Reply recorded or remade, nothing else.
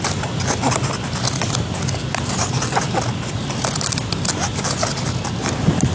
recorded